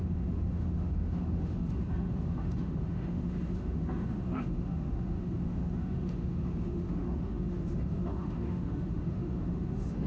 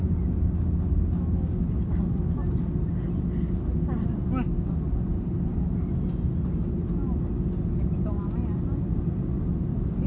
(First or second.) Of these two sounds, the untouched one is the second